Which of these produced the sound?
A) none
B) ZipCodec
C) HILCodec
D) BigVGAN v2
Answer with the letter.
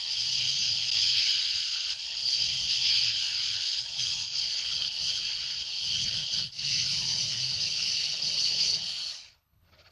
C